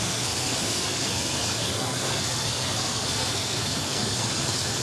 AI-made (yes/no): yes